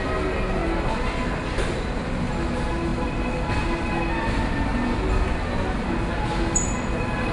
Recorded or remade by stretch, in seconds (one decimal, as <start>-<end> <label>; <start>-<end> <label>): 0.0-7.3 recorded